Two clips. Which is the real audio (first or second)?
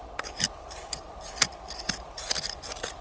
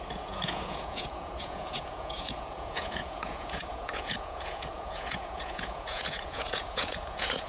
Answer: first